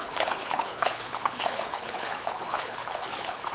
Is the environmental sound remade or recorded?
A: remade